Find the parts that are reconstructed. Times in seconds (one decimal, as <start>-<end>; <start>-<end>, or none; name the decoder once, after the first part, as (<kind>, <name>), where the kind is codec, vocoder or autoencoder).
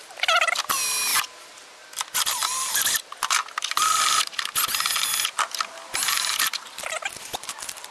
none